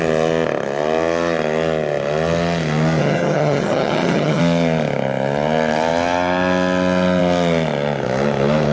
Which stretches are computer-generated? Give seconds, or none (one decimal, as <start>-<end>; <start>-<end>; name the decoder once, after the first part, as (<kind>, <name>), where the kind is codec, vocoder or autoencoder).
3.0-4.4 (vocoder, HiFi-GAN)